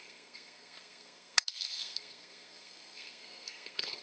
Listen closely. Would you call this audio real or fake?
fake